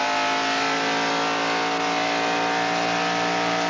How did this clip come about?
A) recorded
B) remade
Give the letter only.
A